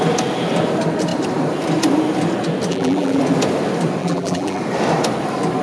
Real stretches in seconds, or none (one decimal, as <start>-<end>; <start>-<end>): 0.0-2.7; 3.2-4.0; 4.6-5.6